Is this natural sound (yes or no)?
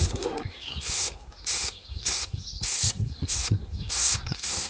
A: no